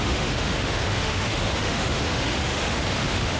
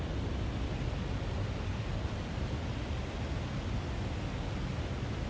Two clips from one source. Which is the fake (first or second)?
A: first